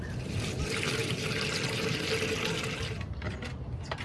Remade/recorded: recorded